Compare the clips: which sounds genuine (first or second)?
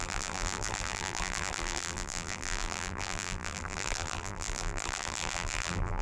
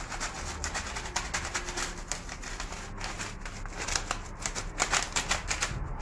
second